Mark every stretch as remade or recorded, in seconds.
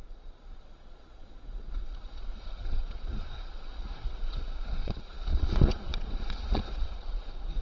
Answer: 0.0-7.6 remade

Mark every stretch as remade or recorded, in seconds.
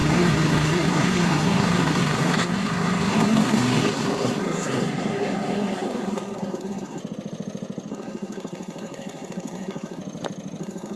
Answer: 0.0-7.0 remade; 7.0-7.9 recorded; 7.9-10.0 remade; 10.0-10.6 recorded; 10.6-11.0 remade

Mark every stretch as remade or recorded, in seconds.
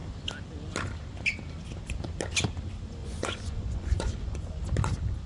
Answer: 0.0-3.0 recorded; 3.0-4.6 remade; 4.6-5.3 recorded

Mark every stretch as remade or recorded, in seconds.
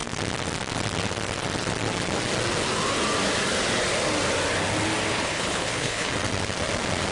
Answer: 0.0-5.1 recorded; 5.1-6.1 remade; 6.1-7.1 recorded